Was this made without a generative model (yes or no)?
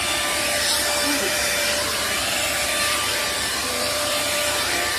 no